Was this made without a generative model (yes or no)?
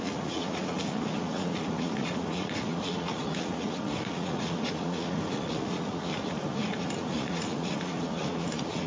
no